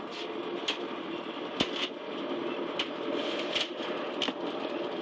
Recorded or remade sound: recorded